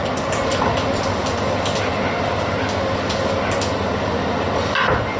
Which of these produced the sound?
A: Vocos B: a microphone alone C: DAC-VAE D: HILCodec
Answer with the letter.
B